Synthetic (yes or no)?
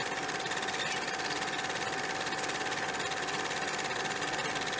no